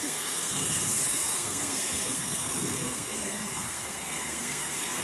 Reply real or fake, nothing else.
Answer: fake